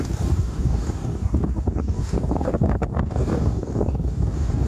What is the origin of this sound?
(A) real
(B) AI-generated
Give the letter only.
B